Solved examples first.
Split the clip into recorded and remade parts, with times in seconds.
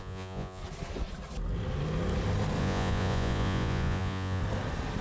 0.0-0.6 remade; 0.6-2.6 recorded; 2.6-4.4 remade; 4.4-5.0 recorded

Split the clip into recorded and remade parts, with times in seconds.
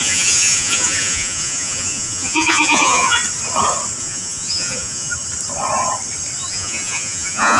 0.0-3.2 remade; 3.2-4.0 recorded; 4.0-5.1 remade; 5.1-6.5 recorded; 6.5-7.6 remade